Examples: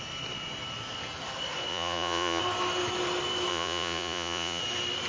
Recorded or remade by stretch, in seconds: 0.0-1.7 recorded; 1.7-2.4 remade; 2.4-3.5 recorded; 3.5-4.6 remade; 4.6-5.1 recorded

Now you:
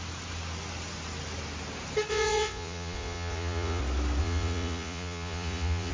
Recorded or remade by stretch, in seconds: 0.0-2.1 recorded; 2.1-3.8 remade; 3.8-4.2 recorded; 4.2-5.9 remade

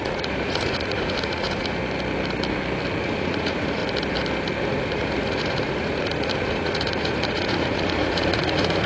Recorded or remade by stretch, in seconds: 0.0-1.8 remade; 1.8-3.0 recorded; 3.0-3.8 remade; 3.8-4.7 recorded; 4.7-8.9 remade

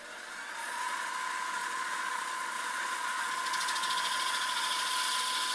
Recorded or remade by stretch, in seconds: 0.0-0.6 recorded; 0.6-1.1 remade; 1.1-1.6 recorded; 1.6-4.9 remade; 4.9-5.5 recorded

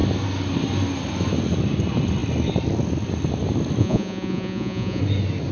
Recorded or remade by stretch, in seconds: 0.0-3.8 recorded; 3.8-5.0 remade; 5.0-5.5 recorded

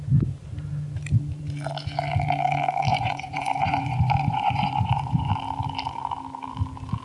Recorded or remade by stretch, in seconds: 0.0-2.9 recorded; 2.9-5.3 remade; 5.3-7.0 recorded

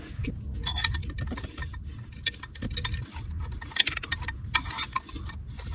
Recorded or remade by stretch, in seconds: 0.0-5.7 recorded